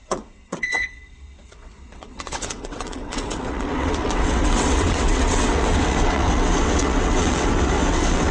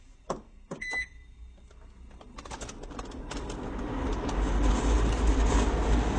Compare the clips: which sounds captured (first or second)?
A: second